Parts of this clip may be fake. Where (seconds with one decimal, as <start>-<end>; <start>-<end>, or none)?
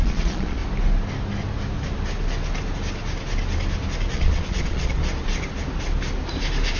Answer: 0.0-0.6; 4.1-5.0